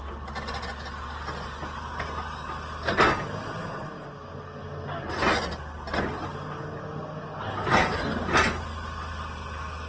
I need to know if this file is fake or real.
real